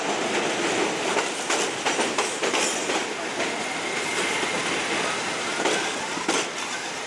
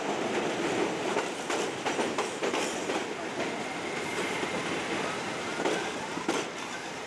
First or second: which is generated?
second